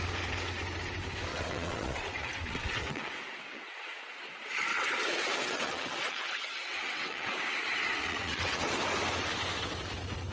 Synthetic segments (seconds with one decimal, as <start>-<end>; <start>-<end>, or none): 1.3-4.1; 4.7-8.6

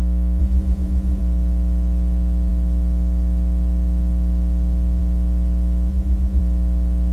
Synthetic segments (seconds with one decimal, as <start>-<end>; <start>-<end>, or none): 0.4-1.2; 5.9-6.4

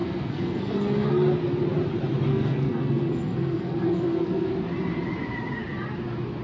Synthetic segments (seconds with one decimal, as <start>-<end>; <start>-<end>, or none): 0.0-1.1; 2.3-4.5

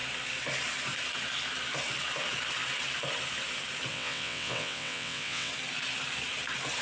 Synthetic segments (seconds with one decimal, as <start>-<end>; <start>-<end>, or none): 3.9-5.5

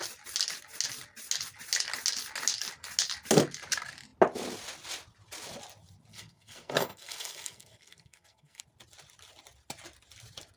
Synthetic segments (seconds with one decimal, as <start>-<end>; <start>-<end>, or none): 6.1-8.6

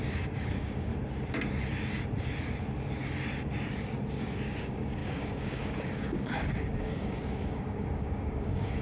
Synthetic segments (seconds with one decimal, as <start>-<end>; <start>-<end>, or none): 0.0-0.9; 4.1-8.8

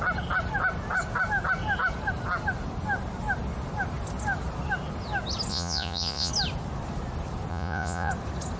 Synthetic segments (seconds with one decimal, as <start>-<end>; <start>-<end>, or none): 5.5-6.3; 7.5-8.1

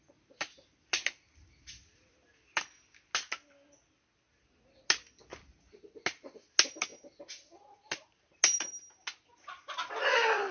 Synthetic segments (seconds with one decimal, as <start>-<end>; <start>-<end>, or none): none